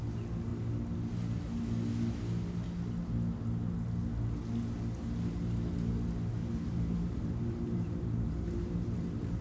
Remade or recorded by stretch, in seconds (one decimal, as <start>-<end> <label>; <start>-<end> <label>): 0.0-6.4 recorded; 6.4-9.4 remade